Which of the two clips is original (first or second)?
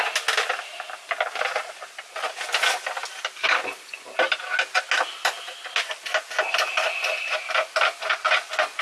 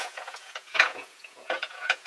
first